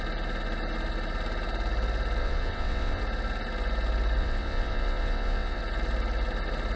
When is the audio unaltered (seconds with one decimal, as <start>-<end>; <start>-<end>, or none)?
0.0-2.2; 3.0-4.2; 5.6-6.8